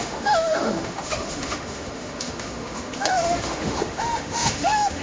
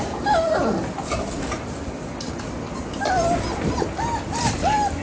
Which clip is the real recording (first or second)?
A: second